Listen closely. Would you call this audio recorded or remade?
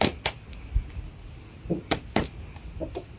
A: recorded